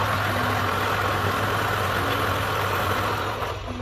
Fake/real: real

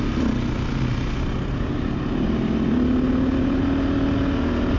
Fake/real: real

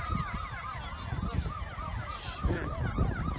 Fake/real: real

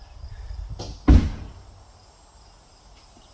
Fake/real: real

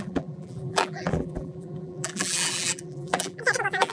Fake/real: fake